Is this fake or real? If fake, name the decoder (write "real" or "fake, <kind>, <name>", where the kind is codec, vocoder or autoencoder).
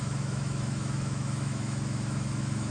fake, autoencoder, DAC-VAE